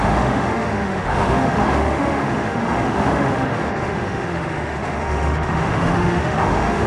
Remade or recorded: remade